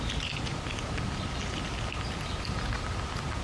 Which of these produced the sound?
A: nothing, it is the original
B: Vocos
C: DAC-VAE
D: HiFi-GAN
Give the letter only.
A